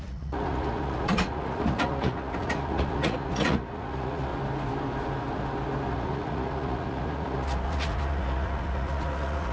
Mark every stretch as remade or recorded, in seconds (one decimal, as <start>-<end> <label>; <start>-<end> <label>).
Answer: 0.0-4.3 remade; 4.3-5.9 recorded; 5.9-9.5 remade